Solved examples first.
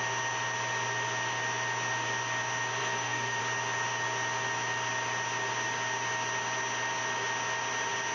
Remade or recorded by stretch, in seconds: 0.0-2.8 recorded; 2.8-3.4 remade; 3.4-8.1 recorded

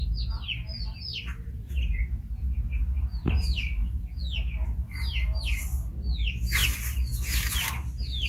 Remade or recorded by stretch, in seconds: 0.0-1.1 recorded; 1.1-4.0 remade; 4.0-8.3 recorded

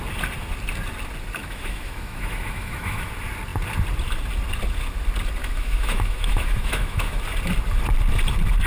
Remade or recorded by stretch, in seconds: 0.0-1.4 recorded; 1.4-3.1 remade; 3.1-5.4 recorded; 5.4-7.2 remade; 7.2-8.7 recorded